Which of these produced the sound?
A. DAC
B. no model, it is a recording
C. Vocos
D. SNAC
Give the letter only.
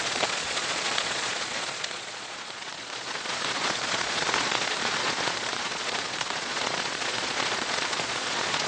C